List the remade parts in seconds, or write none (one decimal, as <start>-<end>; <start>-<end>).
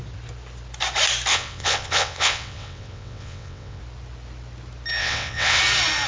1.3-3.8; 5.0-5.6